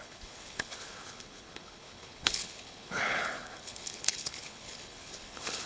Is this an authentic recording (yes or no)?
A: no